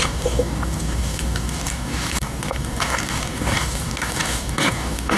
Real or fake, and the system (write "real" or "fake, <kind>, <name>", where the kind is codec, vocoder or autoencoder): fake, codec, DAC